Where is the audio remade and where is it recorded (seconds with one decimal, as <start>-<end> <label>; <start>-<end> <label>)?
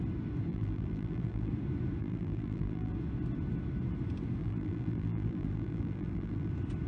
0.0-0.5 recorded; 0.5-1.5 remade; 1.5-2.0 recorded; 2.0-2.9 remade; 2.9-4.4 recorded; 4.4-6.5 remade; 6.5-6.9 recorded